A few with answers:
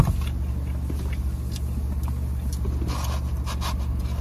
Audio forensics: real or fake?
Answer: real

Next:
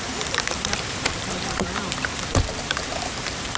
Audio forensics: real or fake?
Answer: fake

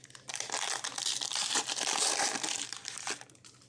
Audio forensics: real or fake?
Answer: fake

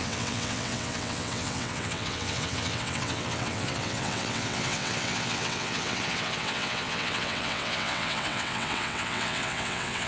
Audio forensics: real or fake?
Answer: fake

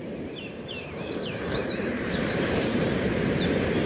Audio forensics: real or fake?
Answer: fake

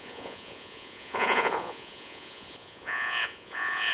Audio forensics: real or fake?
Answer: fake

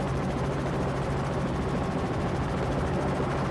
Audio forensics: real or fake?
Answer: fake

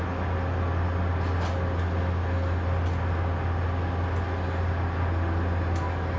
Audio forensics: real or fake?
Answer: real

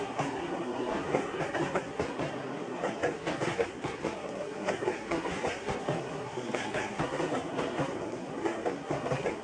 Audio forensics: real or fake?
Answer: fake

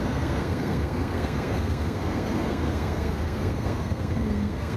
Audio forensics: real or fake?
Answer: fake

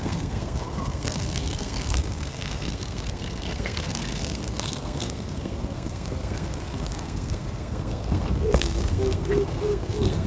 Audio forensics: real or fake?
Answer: fake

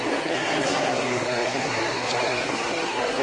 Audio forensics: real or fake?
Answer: fake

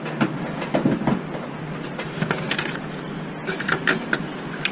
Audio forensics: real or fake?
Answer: real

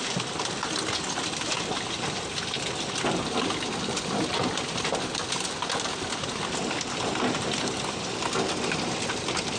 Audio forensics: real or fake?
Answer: real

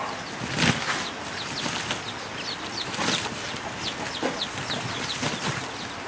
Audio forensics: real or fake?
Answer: real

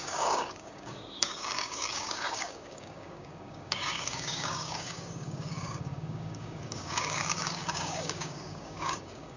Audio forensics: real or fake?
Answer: fake